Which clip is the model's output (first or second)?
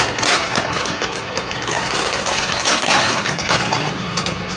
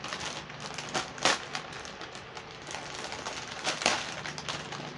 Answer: first